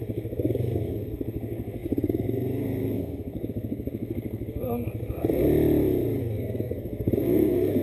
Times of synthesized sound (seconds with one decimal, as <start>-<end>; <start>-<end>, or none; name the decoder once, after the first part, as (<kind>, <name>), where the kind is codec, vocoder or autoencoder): 0.0-5.4 (codec, SNAC); 6.2-7.8